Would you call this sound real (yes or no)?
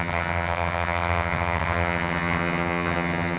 no